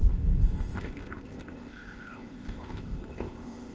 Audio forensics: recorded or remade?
remade